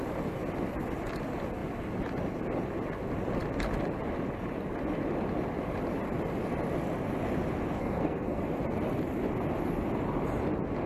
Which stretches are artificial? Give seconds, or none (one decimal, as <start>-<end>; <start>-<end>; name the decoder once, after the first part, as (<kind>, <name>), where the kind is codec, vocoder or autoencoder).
7.8-8.4 (codec, SNAC)